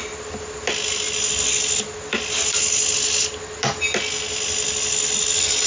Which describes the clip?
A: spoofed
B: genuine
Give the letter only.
B